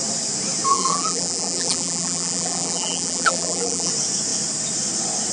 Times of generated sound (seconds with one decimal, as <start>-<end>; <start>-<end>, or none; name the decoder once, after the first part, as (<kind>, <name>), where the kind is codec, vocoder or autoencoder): 0.7-3.9 (vocoder, BigVGAN v2)